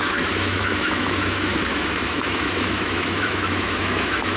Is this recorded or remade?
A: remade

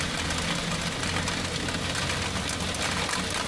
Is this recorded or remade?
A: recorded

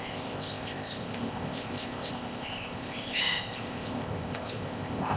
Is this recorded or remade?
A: remade